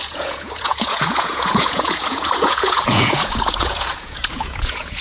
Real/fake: fake